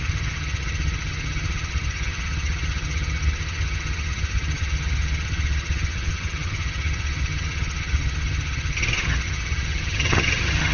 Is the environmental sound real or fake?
fake